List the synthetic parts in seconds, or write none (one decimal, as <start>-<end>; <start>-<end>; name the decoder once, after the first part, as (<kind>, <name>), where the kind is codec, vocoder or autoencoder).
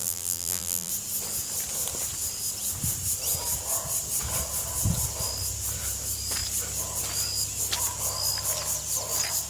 0.0-0.9 (vocoder, BigVGAN v2)